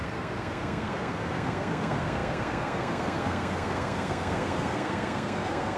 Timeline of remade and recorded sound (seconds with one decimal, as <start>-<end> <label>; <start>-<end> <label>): 0.0-5.8 remade